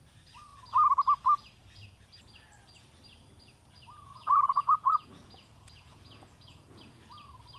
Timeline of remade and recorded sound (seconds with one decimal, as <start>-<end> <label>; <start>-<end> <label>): 0.0-4.1 recorded; 4.1-6.8 remade; 6.8-7.6 recorded